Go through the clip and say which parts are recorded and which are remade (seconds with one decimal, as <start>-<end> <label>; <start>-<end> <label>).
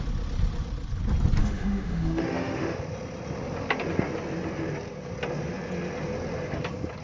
0.0-1.4 recorded; 1.4-2.8 remade; 2.8-7.0 recorded